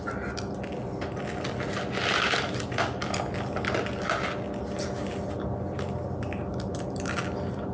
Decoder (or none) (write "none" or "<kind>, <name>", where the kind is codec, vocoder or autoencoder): none